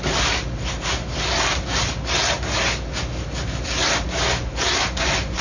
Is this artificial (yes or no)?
no